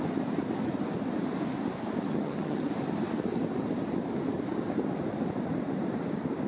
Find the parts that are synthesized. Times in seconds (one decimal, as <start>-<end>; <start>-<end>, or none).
2.1-2.7